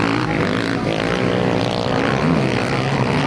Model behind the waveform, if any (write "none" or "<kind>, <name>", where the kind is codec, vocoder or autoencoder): none